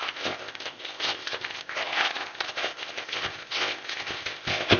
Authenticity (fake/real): fake